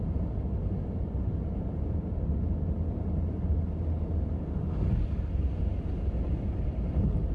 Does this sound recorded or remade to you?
recorded